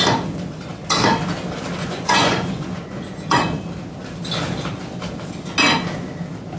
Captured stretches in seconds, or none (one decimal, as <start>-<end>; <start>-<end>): 0.0-1.8; 3.6-6.6